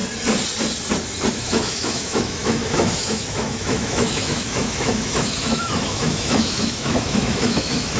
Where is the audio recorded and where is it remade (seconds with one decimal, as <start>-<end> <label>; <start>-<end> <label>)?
0.0-1.3 recorded; 1.3-8.0 remade